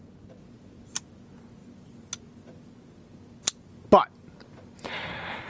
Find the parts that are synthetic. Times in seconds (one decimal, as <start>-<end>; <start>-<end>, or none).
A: none